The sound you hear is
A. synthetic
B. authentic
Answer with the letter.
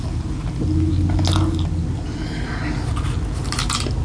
B